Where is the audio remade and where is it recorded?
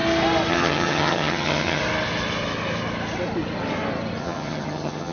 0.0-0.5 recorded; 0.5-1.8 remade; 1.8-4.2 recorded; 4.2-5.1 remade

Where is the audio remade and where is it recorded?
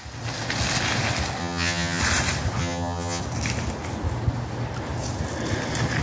0.0-1.4 recorded; 1.4-2.0 remade; 2.0-2.6 recorded; 2.6-3.2 remade; 3.2-6.0 recorded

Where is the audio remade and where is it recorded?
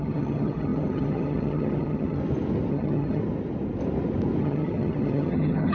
0.0-2.2 remade; 2.2-2.7 recorded; 2.7-3.2 remade; 3.2-4.4 recorded; 4.4-5.7 remade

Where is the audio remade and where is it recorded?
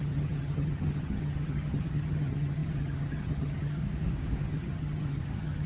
0.0-3.8 remade; 3.8-4.4 recorded; 4.4-5.7 remade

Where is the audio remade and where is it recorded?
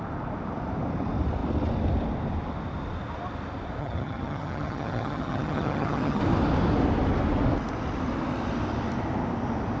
0.0-3.8 recorded; 3.8-6.2 remade; 6.2-9.8 recorded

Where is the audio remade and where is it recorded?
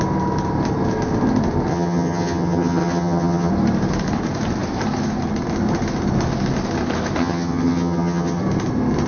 0.0-1.7 recorded; 1.7-3.5 remade; 3.5-7.2 recorded; 7.2-8.4 remade; 8.4-9.1 recorded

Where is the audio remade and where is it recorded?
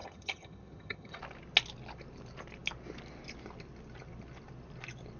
0.0-1.2 remade; 1.2-5.2 recorded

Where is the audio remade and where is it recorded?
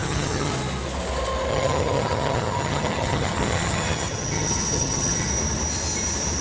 0.0-0.5 remade; 0.5-1.5 recorded; 1.5-5.3 remade; 5.3-6.4 recorded